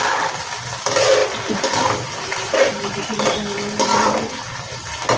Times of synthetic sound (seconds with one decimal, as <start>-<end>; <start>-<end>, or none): none